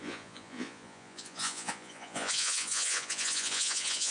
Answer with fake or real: fake